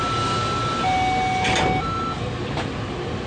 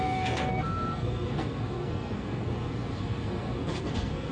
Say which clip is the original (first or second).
first